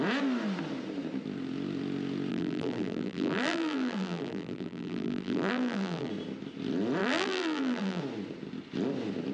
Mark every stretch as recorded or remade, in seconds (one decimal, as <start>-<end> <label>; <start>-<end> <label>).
0.0-2.3 recorded; 2.3-6.1 remade; 6.1-7.0 recorded; 7.0-8.0 remade; 8.0-9.3 recorded